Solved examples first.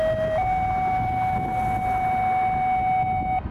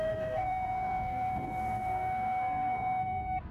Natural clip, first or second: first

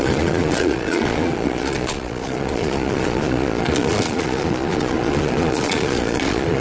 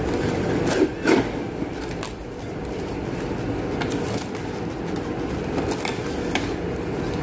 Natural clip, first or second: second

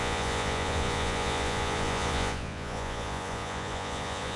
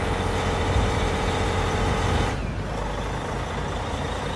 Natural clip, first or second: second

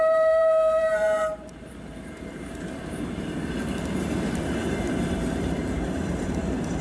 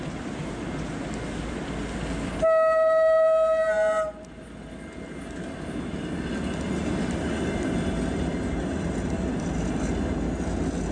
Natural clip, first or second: second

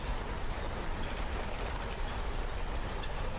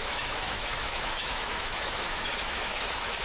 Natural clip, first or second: first